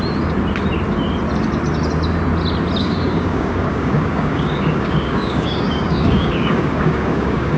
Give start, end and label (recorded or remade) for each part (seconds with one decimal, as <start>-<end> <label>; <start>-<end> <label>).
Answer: 0.0-2.8 recorded; 2.8-7.6 remade